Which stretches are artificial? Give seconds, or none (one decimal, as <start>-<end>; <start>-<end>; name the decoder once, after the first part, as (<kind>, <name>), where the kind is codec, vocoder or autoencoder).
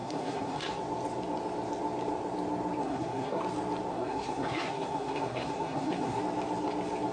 0.0-0.8 (codec, SNAC); 2.8-3.4; 3.9-6.2